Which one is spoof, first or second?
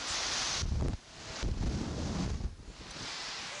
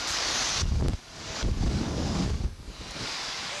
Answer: second